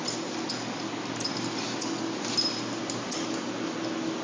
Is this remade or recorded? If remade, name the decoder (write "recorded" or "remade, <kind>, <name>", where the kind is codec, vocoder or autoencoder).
recorded